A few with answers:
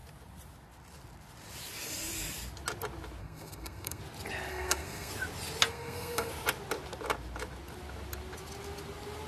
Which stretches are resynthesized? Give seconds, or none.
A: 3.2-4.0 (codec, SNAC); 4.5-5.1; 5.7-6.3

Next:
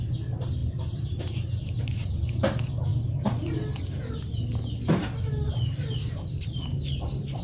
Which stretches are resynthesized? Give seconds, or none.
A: none

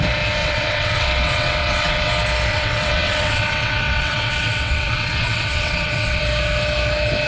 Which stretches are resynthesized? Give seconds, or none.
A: 0.4-2.1 (vocoder, WaveNeXt); 2.5-6.2

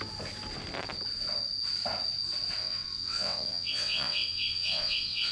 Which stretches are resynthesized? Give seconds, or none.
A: 2.6-5.3 (vocoder, WaveNeXt)

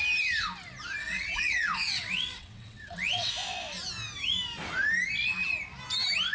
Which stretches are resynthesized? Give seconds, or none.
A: 1.0-3.3 (vocoder, WaveNeXt)

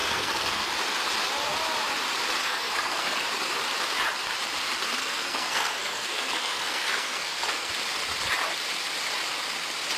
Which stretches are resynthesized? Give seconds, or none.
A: 0.0-0.7 (codec, SNAC); 2.4-3.2; 5.0-7.7